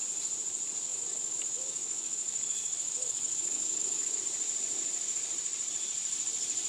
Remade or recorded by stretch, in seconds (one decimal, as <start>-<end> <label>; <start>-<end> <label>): 0.0-0.9 recorded; 0.9-4.2 remade; 4.2-6.7 recorded

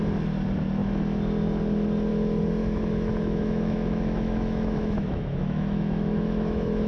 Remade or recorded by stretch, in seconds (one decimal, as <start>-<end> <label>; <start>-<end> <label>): 0.0-2.6 recorded; 2.6-6.9 remade